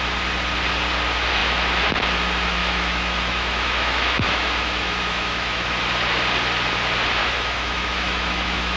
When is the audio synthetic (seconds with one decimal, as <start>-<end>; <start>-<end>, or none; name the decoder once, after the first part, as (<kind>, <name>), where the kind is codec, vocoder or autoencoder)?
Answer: 2.6-5.7 (autoencoder, DAC-VAE); 7.2-8.8